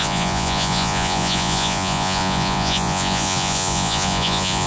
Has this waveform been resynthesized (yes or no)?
yes